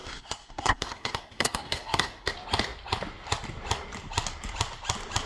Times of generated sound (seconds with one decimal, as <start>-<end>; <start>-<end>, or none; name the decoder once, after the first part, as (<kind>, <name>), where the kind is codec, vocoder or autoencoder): 0.0-2.3 (codec, SNAC)